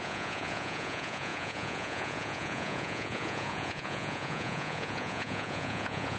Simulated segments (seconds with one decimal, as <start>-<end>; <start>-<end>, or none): 0.0-6.2